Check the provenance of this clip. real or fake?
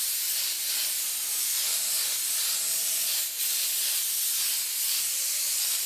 real